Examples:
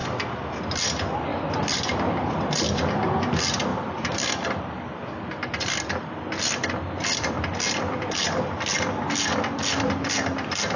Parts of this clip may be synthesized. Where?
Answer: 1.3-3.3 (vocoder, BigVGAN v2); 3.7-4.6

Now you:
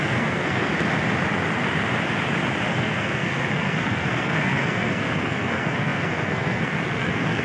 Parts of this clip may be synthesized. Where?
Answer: 0.0-0.7 (codec, SNAC); 2.7-7.4

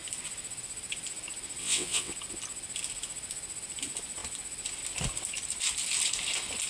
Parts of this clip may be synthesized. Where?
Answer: 1.6-2.1 (vocoder, WaveNeXt)

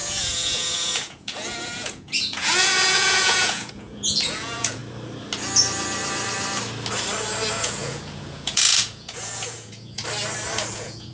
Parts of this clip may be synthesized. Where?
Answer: 0.0-4.8 (vocoder, Vocos); 7.5-10.0; 10.7-11.1

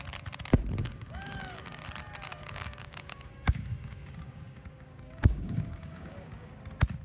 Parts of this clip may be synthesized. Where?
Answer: 0.8-1.8 (codec, DAC); 2.3-6.5

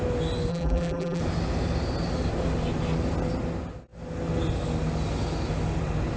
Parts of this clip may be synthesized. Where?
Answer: 0.5-1.2 (vocoder, BigVGAN v2)

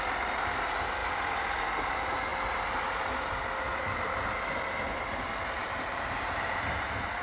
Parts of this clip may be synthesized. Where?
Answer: 5.6-6.8 (vocoder, BigVGAN v2)